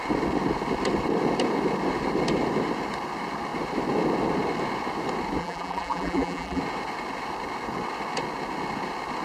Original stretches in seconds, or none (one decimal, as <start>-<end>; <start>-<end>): 0.0-5.4; 6.6-9.2